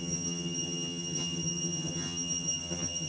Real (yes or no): no